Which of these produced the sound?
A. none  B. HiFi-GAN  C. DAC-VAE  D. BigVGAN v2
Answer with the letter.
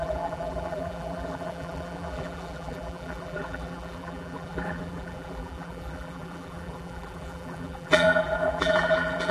D